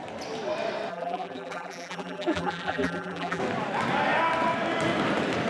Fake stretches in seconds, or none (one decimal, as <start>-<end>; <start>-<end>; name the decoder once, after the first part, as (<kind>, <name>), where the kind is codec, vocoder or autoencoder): 0.9-3.4 (vocoder, BigVGAN v2)